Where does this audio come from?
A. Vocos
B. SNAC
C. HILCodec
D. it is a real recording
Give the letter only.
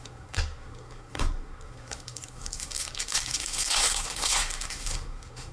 B